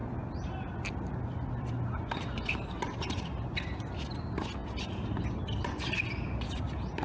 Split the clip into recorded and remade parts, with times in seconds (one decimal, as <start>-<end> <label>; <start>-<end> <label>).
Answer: 0.0-7.0 recorded